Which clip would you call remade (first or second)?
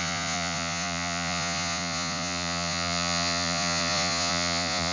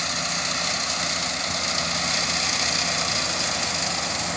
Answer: first